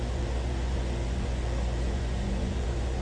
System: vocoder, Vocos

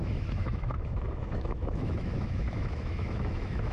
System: autoencoder, DAC-VAE